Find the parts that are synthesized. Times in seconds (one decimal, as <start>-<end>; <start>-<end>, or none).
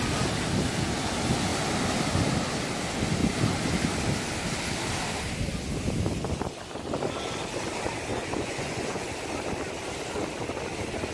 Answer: 8.1-9.1